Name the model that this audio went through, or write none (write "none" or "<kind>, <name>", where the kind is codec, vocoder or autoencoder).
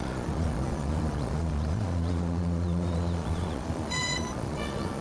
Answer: vocoder, Vocos